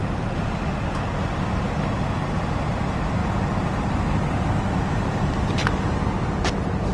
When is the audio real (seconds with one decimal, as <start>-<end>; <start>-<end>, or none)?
0.0-6.9